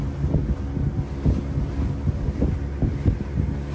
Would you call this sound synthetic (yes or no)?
no